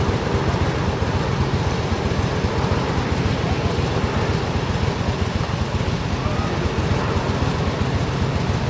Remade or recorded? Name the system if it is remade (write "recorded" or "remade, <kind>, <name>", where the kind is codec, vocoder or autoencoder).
recorded